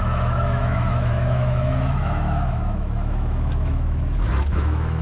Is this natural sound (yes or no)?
no